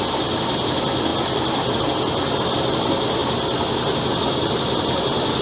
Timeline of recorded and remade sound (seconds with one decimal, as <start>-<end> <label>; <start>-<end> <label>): 0.0-5.4 recorded